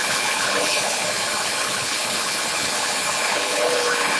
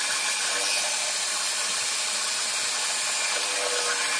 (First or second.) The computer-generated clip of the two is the first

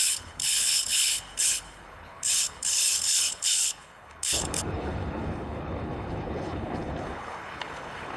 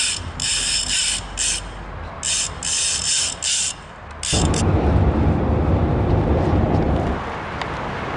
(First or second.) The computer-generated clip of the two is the first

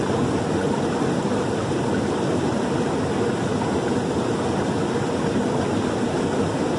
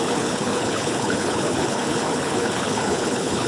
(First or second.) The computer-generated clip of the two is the second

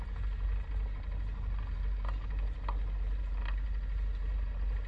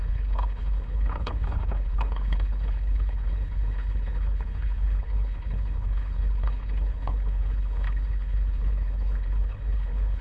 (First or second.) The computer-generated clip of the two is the second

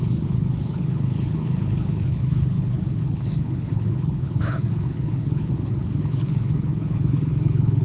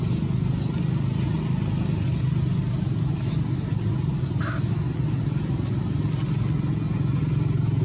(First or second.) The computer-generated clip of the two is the first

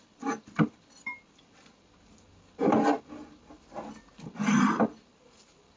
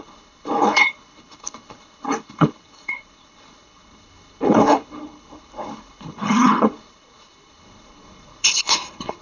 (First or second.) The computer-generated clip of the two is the second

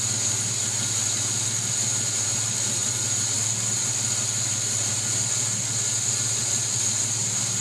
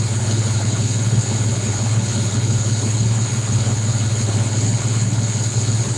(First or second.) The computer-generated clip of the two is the second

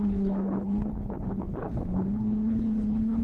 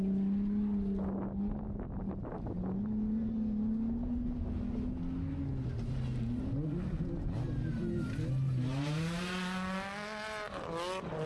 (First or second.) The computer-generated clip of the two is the first